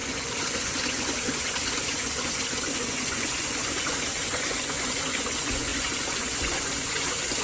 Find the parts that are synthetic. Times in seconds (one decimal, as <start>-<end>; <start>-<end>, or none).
0.0-7.4